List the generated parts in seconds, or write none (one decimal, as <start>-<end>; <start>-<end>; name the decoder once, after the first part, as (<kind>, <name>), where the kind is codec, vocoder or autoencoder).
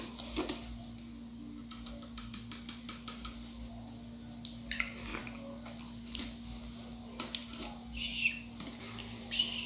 5.1-6.2 (vocoder, BigVGAN v2)